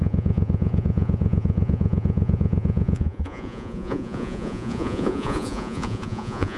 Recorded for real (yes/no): no